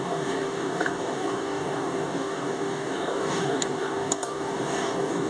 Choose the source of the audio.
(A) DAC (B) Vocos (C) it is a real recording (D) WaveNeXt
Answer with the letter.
A